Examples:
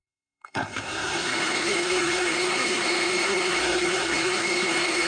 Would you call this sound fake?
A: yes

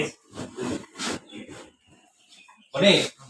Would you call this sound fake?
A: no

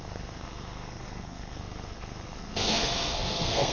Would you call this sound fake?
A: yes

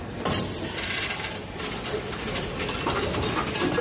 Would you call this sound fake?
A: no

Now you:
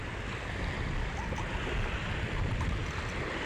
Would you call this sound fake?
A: no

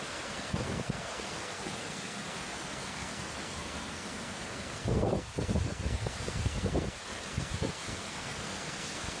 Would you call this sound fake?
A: yes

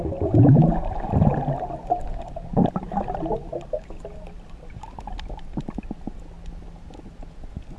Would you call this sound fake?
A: no